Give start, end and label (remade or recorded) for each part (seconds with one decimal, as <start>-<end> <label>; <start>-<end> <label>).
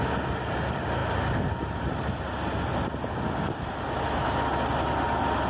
0.0-5.5 recorded